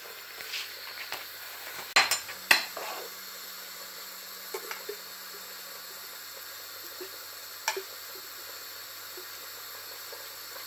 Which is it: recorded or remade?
recorded